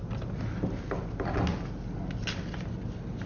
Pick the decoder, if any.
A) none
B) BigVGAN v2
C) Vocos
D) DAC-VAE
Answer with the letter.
A